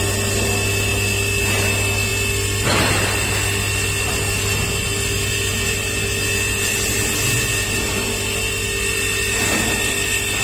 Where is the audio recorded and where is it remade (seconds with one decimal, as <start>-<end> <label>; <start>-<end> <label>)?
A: 0.0-10.4 recorded